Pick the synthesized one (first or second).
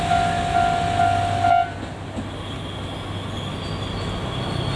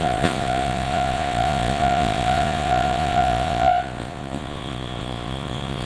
second